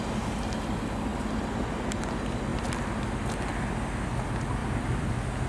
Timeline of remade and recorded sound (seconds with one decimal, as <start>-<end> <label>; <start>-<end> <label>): 0.0-4.6 recorded; 4.6-5.1 remade; 5.1-5.5 recorded